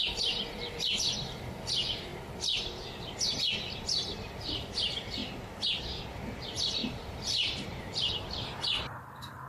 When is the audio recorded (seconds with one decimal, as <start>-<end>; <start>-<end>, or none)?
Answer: 2.1-3.8; 5.2-6.0